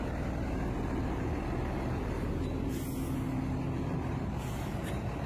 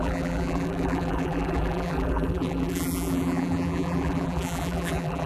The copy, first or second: second